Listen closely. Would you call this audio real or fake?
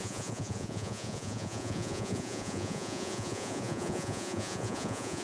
fake